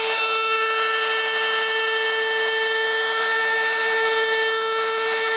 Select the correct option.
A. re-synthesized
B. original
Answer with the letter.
A